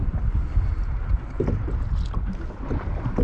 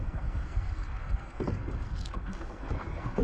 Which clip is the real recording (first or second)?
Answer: first